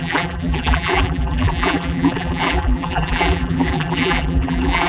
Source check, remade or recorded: remade